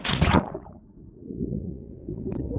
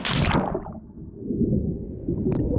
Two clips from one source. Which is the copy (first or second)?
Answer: first